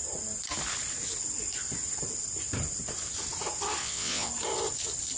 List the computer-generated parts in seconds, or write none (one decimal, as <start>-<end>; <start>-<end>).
3.8-4.3